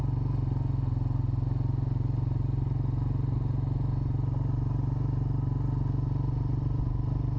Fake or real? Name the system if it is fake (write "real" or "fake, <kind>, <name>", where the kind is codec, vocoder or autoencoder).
real